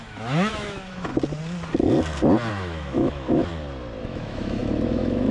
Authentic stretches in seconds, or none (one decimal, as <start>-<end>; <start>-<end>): 1.1-2.5; 3.5-4.0